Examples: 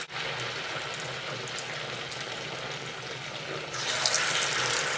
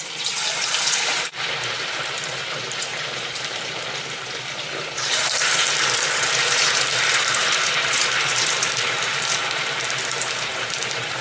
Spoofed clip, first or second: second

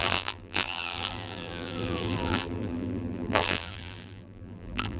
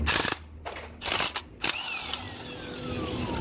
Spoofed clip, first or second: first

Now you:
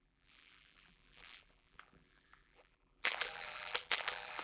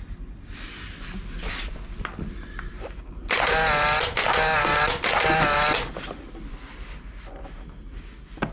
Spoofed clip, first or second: first